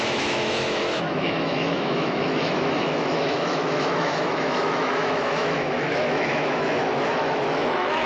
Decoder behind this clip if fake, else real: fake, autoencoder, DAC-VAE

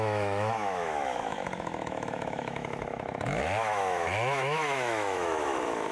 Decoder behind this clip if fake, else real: fake, autoencoder, DAC-VAE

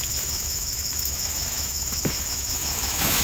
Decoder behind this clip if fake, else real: fake, autoencoder, DAC-VAE